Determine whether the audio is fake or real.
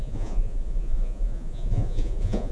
fake